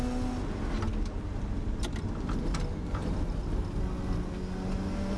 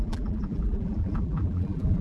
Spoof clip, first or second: second